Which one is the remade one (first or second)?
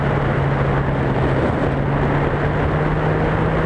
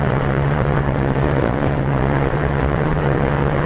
second